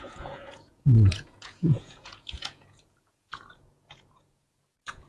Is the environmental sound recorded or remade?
remade